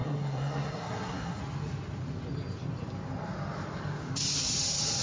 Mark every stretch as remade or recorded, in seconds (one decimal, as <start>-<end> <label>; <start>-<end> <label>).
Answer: 0.0-1.4 remade; 1.4-5.0 recorded